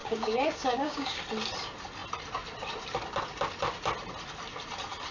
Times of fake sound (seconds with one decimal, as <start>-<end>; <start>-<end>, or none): 0.0-1.2